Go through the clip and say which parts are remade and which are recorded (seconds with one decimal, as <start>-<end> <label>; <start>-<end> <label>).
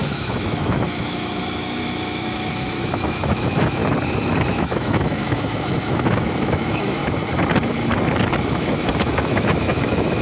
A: 0.0-3.8 remade; 3.8-4.5 recorded; 4.5-7.0 remade; 7.0-8.4 recorded; 8.4-10.2 remade